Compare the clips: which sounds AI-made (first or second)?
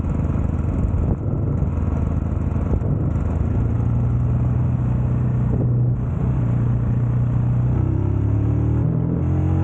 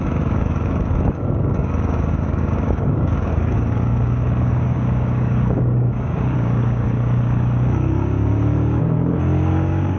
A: second